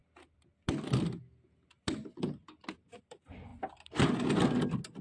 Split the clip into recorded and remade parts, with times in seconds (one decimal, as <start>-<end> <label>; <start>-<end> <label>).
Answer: 0.0-5.0 recorded

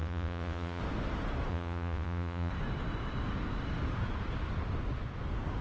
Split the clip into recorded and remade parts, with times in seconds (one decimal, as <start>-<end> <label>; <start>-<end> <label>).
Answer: 0.0-0.8 remade; 0.8-1.5 recorded; 1.5-2.5 remade; 2.5-5.6 recorded

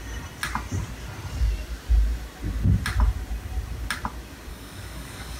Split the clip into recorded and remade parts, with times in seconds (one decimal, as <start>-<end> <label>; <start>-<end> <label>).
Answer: 0.0-4.5 recorded; 4.5-5.4 remade

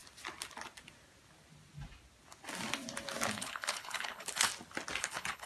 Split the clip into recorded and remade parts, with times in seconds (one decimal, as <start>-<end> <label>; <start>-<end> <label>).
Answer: 0.0-3.3 recorded; 3.3-4.5 remade; 4.5-5.0 recorded; 5.0-5.5 remade